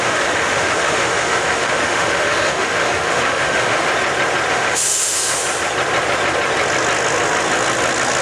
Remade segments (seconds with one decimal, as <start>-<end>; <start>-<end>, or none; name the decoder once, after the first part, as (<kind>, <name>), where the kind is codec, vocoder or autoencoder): 0.0-3.9 (autoencoder, DAC-VAE); 4.5-5.4